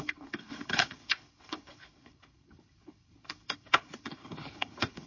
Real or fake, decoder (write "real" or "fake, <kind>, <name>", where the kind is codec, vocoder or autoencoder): fake, codec, HILCodec